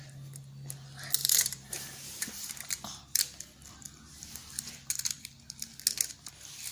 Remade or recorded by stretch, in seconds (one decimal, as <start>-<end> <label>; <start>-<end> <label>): 0.0-1.2 recorded; 1.2-3.2 remade; 3.2-6.7 recorded